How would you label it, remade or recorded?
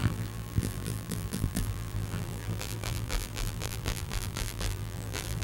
remade